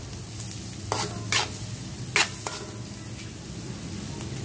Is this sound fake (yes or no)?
no